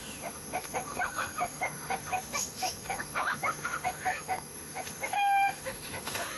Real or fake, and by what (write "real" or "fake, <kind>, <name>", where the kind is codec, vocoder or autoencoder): fake, autoencoder, DAC-VAE